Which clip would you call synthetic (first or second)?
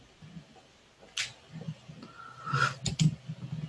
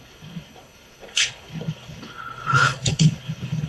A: second